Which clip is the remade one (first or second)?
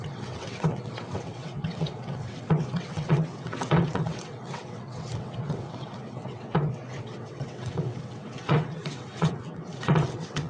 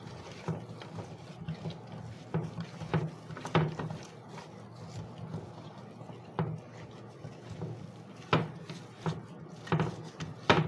first